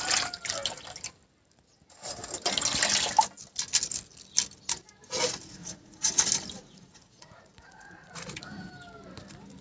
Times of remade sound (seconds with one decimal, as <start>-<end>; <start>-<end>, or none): 5.6-6.1; 6.6-8.7